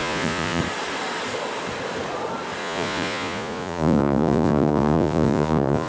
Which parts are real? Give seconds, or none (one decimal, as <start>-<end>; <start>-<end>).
0.6-2.6